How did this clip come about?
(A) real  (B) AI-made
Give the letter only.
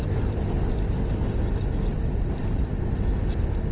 A